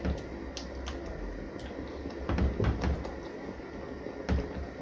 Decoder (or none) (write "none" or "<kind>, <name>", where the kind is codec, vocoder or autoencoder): none